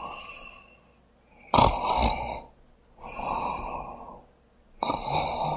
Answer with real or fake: real